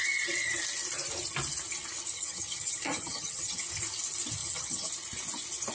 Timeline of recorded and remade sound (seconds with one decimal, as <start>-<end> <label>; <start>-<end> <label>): 0.0-2.1 recorded; 2.1-3.6 remade; 3.6-4.4 recorded; 4.4-4.9 remade; 4.9-5.7 recorded